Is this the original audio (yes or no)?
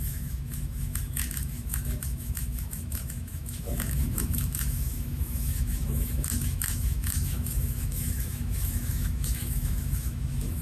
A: no